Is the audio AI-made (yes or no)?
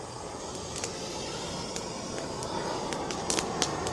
no